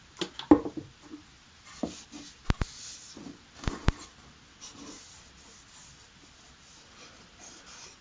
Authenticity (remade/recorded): recorded